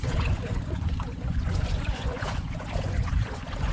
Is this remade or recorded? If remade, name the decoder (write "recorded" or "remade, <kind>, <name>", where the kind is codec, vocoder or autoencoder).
remade, vocoder, Vocos